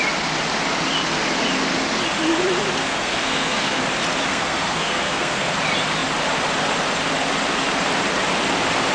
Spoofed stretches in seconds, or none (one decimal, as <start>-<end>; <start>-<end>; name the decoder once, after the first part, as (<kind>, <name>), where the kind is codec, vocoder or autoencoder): 2.8-3.8 (codec, SNAC); 4.3-5.5